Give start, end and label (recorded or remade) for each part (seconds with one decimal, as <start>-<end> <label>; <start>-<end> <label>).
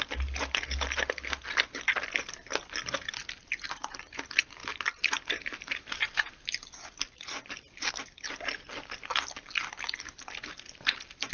0.0-4.6 recorded; 4.6-7.9 remade; 7.9-11.3 recorded